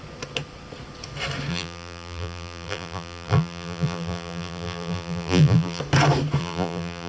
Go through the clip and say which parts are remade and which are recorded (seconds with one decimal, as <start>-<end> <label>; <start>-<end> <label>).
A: 0.0-1.5 recorded; 1.5-5.8 remade; 5.8-6.4 recorded; 6.4-7.1 remade